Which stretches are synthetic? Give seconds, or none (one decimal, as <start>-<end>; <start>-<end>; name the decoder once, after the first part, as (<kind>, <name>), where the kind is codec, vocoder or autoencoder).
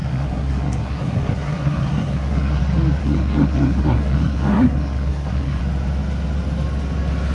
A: 0.0-2.6 (codec, SNAC); 3.0-5.6